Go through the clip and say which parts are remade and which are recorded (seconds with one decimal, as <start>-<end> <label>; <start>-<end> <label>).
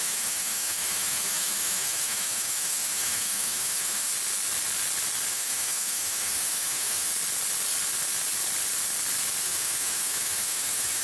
0.0-4.1 remade; 4.1-5.3 recorded; 5.3-7.1 remade; 7.1-9.4 recorded; 9.4-11.0 remade